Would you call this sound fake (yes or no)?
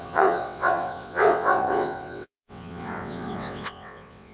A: yes